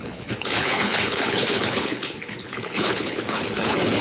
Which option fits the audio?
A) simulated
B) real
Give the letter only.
A